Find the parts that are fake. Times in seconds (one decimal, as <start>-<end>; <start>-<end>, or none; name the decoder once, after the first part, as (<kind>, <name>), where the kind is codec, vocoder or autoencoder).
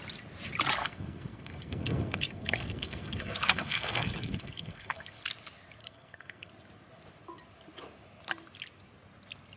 0.8-5.2 (codec, SNAC); 5.8-6.5